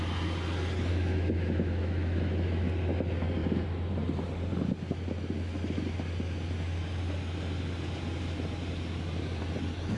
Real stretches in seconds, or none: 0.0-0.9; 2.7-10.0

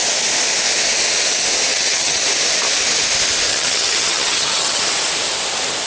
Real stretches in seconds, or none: 0.0-1.7; 2.2-3.5; 4.8-5.9

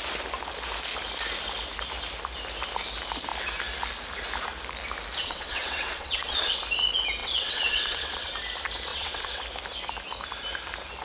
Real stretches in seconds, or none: 0.0-5.2; 6.6-7.2; 8.4-8.9; 9.4-11.0